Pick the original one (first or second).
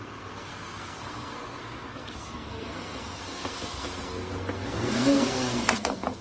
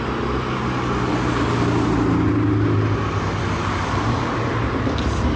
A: second